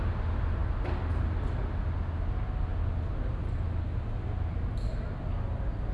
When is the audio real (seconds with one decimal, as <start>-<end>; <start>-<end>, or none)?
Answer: 0.0-5.9